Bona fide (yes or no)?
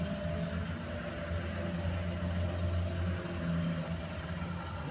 yes